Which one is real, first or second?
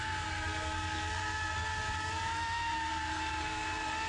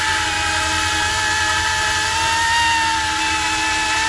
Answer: second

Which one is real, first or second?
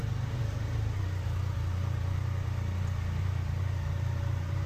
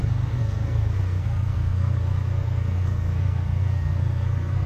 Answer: first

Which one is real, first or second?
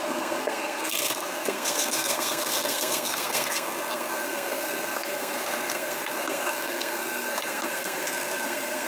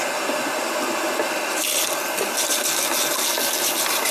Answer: second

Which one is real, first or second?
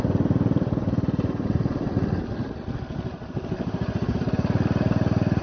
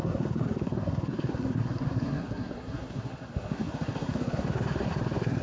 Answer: first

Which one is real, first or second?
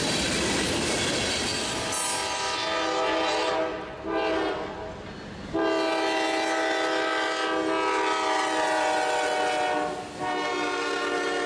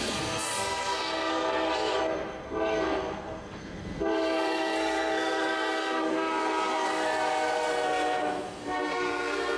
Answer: first